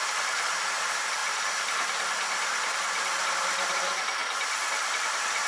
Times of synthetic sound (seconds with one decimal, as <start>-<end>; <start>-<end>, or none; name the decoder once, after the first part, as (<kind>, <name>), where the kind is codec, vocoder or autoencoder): 0.0-1.2 (vocoder, BigVGAN v2); 3.7-4.2; 5.0-5.5